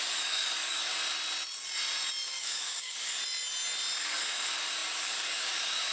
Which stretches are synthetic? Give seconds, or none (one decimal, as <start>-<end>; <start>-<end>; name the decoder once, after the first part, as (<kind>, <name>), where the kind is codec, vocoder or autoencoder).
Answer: 0.0-0.9 (codec, DAC); 2.4-3.2; 4.0-5.9